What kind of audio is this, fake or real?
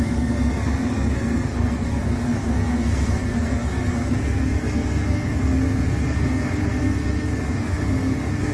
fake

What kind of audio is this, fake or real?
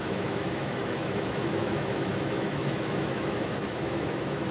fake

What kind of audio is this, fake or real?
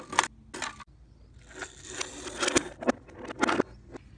real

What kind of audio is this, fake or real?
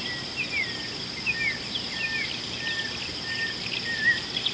real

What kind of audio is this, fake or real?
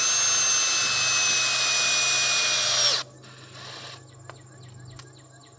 real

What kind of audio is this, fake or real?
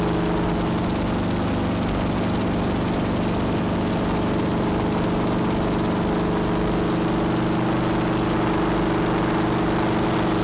real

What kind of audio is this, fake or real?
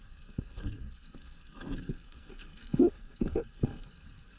fake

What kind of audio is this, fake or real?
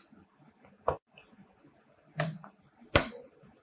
real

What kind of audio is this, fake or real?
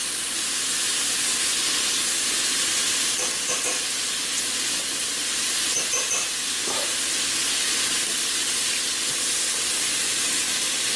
real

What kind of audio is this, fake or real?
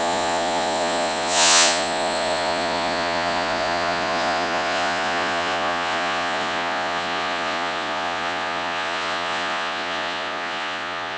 fake